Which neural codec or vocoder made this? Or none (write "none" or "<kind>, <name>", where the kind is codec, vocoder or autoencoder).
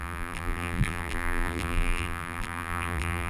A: vocoder, BigVGAN v2